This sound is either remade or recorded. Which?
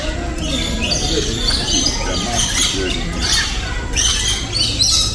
recorded